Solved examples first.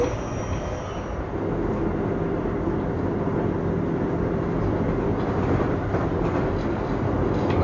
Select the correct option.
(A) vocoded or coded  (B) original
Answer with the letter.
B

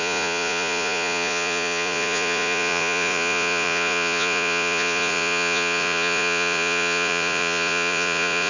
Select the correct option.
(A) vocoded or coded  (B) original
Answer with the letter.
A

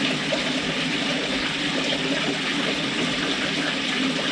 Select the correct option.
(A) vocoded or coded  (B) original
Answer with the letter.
B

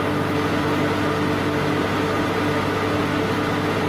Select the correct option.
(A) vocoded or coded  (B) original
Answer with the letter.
B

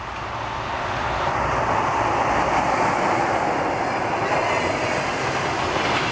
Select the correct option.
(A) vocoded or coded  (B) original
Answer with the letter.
B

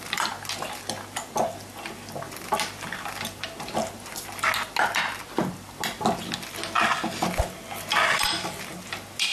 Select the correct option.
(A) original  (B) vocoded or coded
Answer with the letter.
A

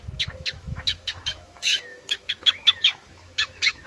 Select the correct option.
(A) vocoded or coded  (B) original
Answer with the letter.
A